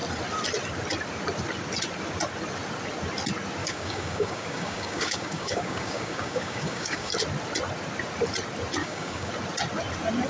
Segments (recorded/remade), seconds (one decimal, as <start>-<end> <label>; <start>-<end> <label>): 0.0-3.6 recorded; 3.6-7.1 remade; 7.1-8.8 recorded; 8.8-9.3 remade; 9.3-10.3 recorded